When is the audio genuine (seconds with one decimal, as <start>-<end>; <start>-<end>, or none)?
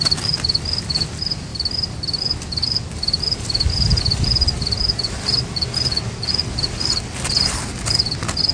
0.0-8.5